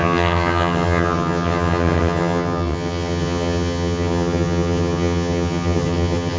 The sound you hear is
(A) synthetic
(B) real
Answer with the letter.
A